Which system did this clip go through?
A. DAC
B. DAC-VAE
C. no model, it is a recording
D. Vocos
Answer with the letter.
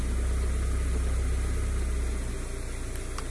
C